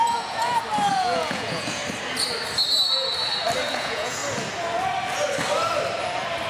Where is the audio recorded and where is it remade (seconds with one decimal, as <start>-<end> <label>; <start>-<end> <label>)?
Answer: 0.0-0.4 remade; 0.4-0.9 recorded; 0.9-1.8 remade; 1.8-3.7 recorded; 3.7-4.2 remade; 4.2-6.5 recorded